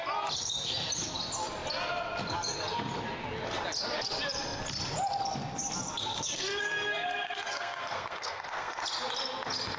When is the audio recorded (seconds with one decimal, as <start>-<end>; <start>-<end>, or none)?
0.0-6.0; 8.8-9.8